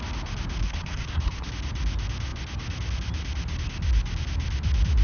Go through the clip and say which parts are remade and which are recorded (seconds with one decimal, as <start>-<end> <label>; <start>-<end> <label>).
0.0-0.6 recorded; 0.6-1.5 remade; 1.5-5.0 recorded